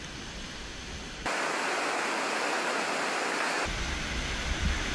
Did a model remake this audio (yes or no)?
no